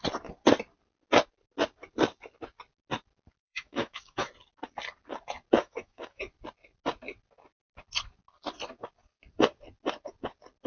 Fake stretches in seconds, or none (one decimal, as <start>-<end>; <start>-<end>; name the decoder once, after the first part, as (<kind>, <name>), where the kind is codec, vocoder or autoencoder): 3.4-4.3 (autoencoder, DAC-VAE); 5.6-6.2